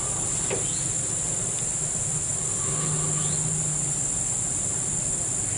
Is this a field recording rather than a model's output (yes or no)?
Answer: yes